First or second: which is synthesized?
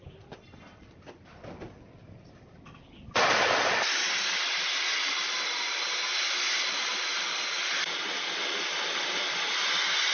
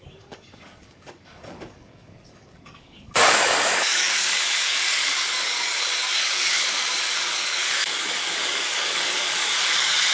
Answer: second